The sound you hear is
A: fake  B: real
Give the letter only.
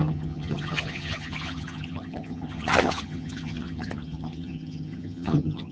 A